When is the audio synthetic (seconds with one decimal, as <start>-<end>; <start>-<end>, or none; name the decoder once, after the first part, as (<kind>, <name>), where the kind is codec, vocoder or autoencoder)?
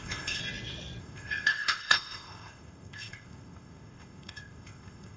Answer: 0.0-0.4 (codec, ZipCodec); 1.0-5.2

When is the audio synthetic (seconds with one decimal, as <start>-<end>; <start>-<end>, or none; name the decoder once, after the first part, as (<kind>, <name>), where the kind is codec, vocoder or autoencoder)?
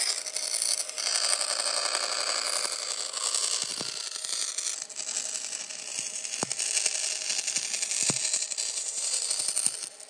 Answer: 3.4-4.5 (vocoder, BigVGAN v2); 9.0-9.5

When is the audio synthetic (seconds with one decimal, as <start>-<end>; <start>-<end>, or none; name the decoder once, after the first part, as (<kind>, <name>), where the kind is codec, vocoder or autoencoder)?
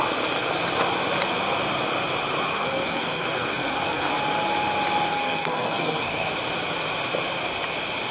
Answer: 2.5-4.1 (codec, SNAC); 5.1-6.3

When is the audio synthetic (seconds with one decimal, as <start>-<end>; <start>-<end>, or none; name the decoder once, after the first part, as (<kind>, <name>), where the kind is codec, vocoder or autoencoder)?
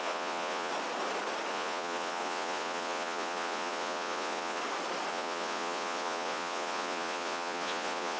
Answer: 0.0-0.7 (vocoder, Vocos); 1.5-4.6; 5.1-8.2